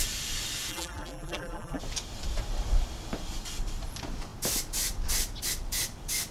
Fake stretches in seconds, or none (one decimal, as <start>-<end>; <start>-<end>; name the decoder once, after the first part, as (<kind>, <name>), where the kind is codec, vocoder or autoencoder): 0.7-1.8 (vocoder, BigVGAN v2)